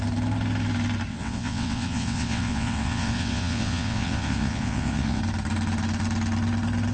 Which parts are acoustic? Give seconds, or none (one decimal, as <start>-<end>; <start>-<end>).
0.0-1.1; 5.2-6.9